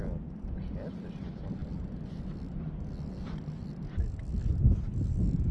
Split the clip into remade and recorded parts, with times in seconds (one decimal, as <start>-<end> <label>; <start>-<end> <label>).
0.0-1.6 remade; 1.6-4.5 recorded; 4.5-5.5 remade